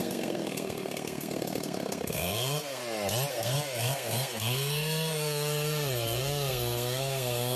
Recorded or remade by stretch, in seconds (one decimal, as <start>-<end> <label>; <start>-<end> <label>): 0.0-2.8 remade; 2.8-3.3 recorded; 3.3-7.6 remade